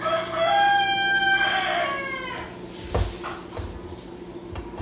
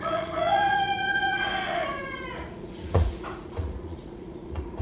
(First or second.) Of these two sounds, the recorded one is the first